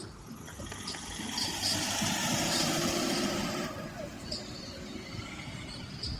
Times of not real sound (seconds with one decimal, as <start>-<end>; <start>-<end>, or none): 2.2-6.2